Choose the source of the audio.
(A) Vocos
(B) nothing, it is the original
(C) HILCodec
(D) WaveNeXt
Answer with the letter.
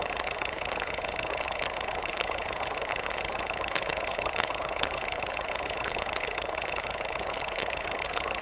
C